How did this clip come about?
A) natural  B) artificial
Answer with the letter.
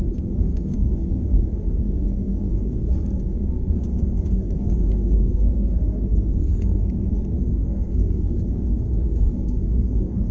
B